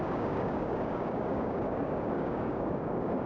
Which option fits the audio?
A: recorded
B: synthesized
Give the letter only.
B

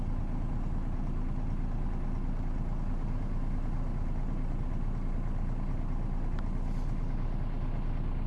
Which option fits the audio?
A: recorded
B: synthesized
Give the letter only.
A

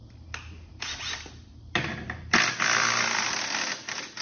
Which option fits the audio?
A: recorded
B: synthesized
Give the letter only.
A